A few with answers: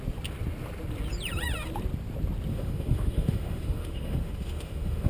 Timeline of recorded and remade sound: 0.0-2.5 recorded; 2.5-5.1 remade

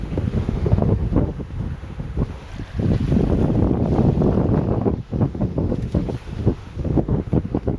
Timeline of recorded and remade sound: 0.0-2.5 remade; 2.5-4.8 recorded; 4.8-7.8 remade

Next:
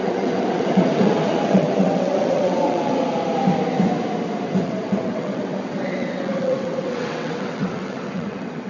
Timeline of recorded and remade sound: 0.0-2.9 remade; 2.9-4.5 recorded; 4.5-8.7 remade

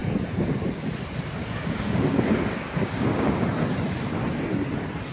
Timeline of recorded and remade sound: 0.0-1.4 recorded; 1.4-3.4 remade; 3.4-5.1 recorded

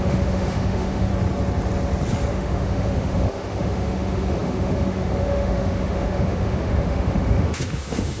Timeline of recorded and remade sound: 0.0-1.1 remade; 1.1-2.3 recorded; 2.3-8.2 remade

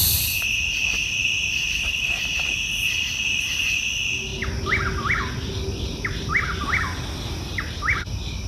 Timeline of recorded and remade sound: 0.0-8.5 recorded

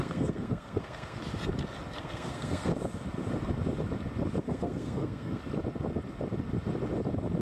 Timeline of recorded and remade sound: 0.0-1.2 remade; 1.2-2.0 recorded; 2.0-2.7 remade; 2.7-4.4 recorded; 4.4-5.4 remade; 5.4-7.4 recorded

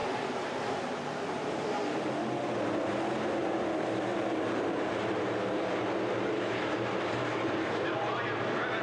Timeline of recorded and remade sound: 0.0-2.1 remade; 2.1-3.4 recorded; 3.4-8.2 remade; 8.2-8.8 recorded